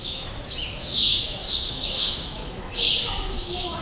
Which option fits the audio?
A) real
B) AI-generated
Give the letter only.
B